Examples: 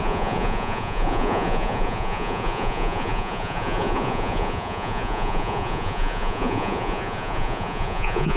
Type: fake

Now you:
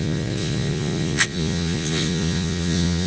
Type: fake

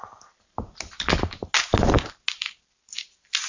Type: real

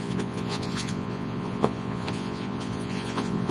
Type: fake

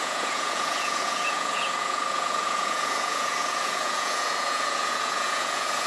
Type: fake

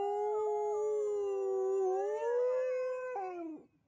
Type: real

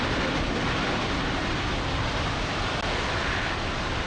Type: real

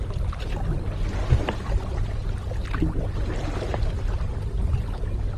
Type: real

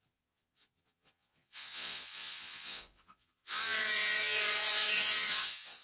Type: fake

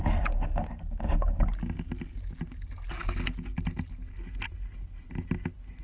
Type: real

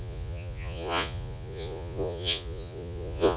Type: fake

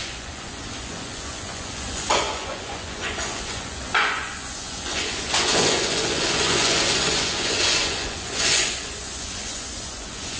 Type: fake